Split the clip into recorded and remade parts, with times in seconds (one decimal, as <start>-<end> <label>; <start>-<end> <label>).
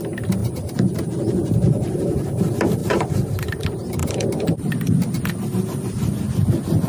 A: 0.0-0.4 recorded; 0.4-2.4 remade; 2.4-2.8 recorded; 2.8-3.6 remade; 3.6-4.0 recorded; 4.0-4.7 remade; 4.7-6.9 recorded